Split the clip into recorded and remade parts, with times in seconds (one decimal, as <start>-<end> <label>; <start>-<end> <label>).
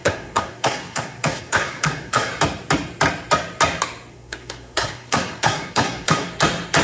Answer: 0.0-2.3 remade; 2.3-4.1 recorded; 4.1-6.3 remade; 6.3-6.8 recorded